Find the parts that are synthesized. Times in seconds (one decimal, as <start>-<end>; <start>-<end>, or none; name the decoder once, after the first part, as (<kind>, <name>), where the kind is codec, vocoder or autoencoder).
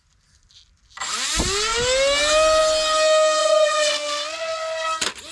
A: 3.4-3.9 (vocoder, Vocos)